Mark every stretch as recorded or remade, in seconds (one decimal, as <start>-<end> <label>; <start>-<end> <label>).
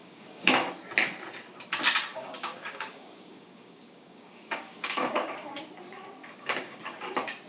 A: 0.0-0.7 remade; 0.7-2.1 recorded; 2.1-5.6 remade; 5.6-6.2 recorded; 6.2-6.8 remade; 6.8-7.5 recorded